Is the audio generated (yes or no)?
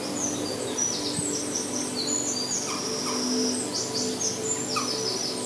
no